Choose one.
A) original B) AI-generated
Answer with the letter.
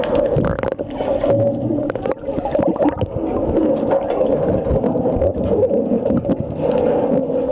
A